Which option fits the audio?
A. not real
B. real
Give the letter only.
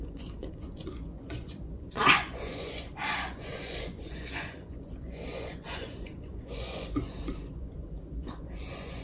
A